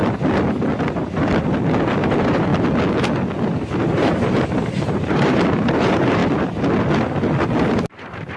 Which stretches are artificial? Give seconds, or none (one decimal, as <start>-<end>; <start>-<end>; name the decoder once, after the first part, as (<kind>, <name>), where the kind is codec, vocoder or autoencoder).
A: 1.9-2.5 (vocoder, BigVGAN v2); 3.8-6.2; 7.7-8.4